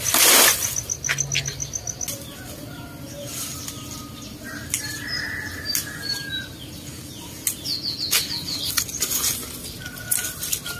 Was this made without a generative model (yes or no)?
yes